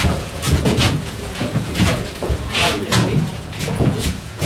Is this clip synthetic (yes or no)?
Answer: yes